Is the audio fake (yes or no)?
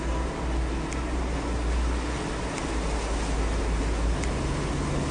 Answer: no